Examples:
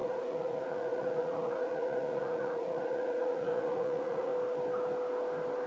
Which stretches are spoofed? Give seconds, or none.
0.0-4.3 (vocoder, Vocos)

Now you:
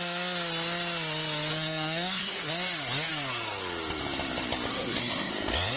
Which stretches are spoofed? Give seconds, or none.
1.5-2.5 (codec, SNAC); 4.7-5.3

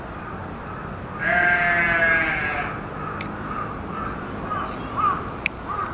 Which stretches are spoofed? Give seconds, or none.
none

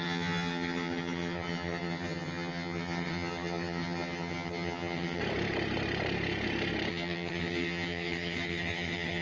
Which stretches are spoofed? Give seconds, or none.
0.0-5.2 (vocoder, HiFi-GAN); 6.9-9.2

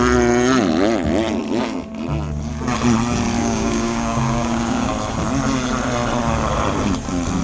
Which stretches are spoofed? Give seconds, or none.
3.4-4.9 (codec, DAC)

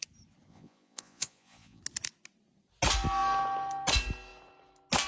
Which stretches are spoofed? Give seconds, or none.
0.5-1.8 (vocoder, Vocos)